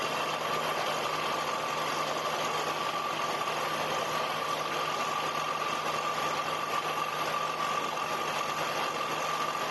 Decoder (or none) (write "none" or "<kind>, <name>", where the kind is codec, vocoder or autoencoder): none